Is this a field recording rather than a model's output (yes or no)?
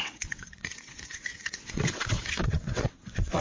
no